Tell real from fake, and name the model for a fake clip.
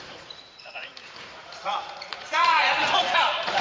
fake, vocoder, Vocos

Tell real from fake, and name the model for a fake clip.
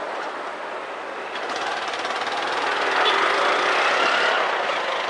real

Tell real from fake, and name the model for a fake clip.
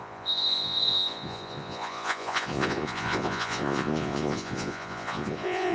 fake, vocoder, Vocos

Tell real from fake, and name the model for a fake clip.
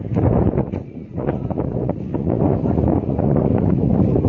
fake, vocoder, Vocos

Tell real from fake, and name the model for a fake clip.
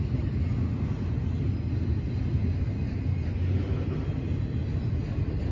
real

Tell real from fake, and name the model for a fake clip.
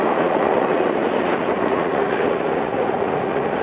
fake, vocoder, Vocos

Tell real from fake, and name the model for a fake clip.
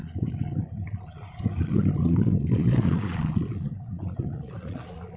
fake, vocoder, Vocos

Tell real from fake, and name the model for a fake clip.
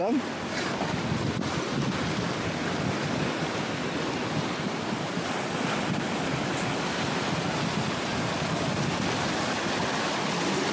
real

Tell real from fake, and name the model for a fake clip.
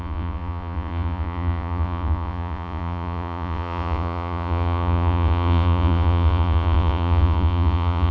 fake, vocoder, Vocos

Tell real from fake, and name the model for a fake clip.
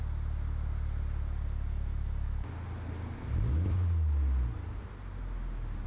real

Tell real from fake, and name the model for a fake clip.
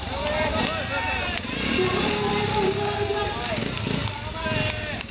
real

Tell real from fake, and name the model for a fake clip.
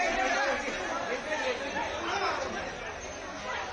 real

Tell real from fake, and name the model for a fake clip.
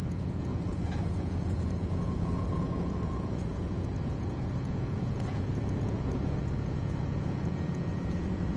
fake, vocoder, Vocos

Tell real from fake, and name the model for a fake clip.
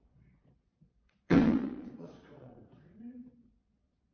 fake, vocoder, Vocos